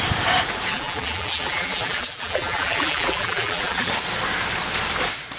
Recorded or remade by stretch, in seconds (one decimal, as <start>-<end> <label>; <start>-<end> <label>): 0.0-0.7 recorded; 0.7-3.9 remade; 3.9-5.4 recorded